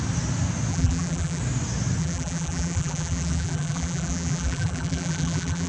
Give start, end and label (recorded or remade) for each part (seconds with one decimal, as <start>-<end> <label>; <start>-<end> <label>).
0.0-0.7 recorded; 0.7-1.4 remade; 1.4-2.0 recorded; 2.0-5.7 remade